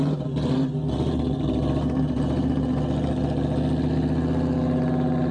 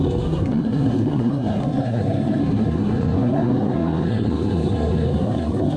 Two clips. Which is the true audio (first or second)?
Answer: first